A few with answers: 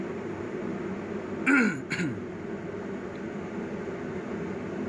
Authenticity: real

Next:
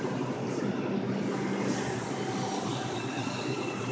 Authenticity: real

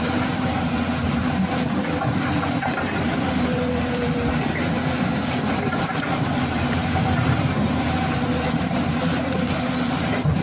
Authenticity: fake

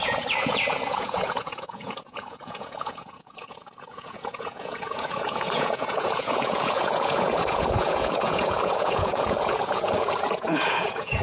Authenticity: fake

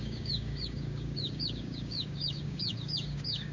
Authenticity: fake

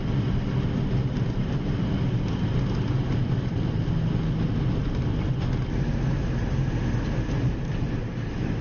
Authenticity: real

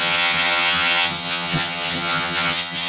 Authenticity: fake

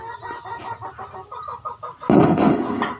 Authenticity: real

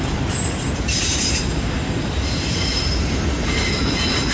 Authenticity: fake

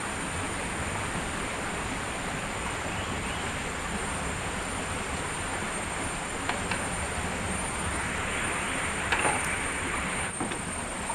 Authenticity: real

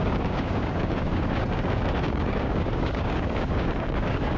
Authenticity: fake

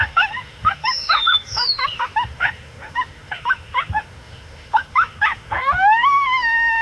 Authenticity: fake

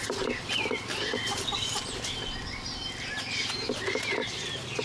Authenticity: fake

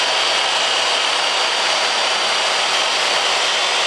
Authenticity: real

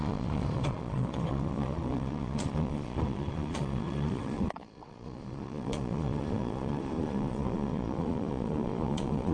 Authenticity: fake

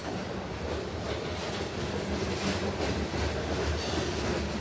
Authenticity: real